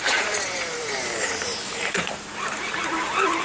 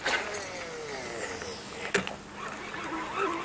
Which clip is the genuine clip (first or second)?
second